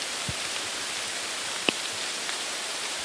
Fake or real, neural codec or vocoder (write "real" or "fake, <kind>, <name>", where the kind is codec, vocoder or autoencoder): fake, vocoder, BigVGAN v2